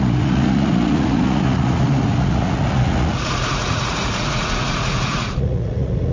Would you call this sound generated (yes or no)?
yes